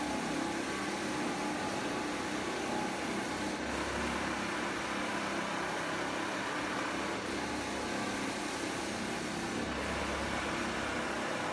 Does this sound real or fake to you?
real